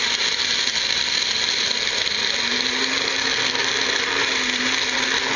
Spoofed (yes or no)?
no